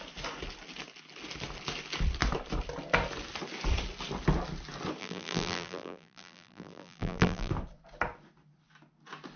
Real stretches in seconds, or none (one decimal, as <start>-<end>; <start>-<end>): 0.0-5.0; 7.5-9.4